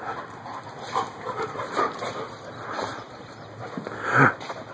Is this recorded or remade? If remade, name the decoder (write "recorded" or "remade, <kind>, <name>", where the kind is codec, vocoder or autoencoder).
recorded